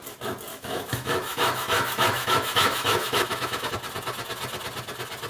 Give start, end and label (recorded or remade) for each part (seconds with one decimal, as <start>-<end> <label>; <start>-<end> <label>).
0.0-0.5 recorded; 0.5-3.7 remade; 3.7-5.3 recorded